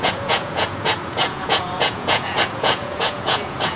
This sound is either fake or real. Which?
fake